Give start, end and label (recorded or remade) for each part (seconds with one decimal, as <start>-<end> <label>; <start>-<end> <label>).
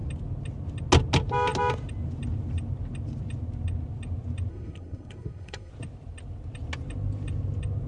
0.0-4.5 recorded; 4.5-5.7 remade; 5.7-7.9 recorded